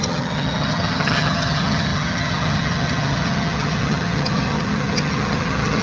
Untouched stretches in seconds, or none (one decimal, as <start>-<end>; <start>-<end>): none